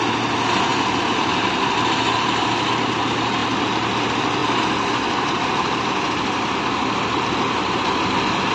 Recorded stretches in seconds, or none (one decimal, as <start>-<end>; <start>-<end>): 0.0-8.5